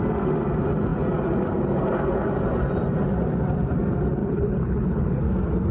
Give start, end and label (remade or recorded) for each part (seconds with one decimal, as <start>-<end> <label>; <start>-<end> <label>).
0.0-4.2 recorded; 4.2-5.2 remade; 5.2-5.7 recorded